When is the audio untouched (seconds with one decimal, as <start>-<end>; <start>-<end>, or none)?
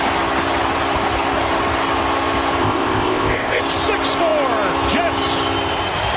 0.0-2.6; 3.6-6.2